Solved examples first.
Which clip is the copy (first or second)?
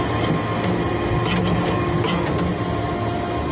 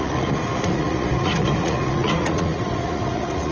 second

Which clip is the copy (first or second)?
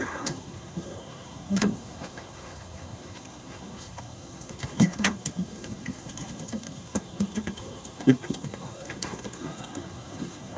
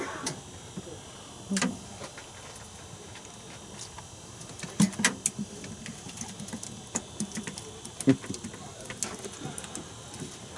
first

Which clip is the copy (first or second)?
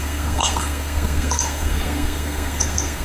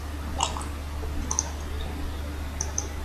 first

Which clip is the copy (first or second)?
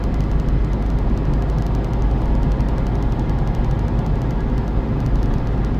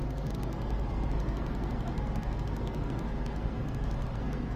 second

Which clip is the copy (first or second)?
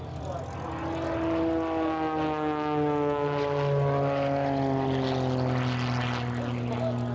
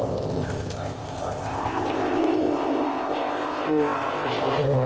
second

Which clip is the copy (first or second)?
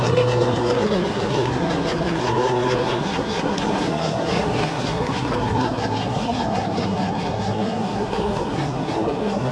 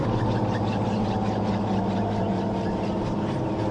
first